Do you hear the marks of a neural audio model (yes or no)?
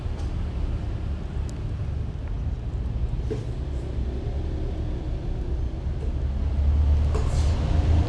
no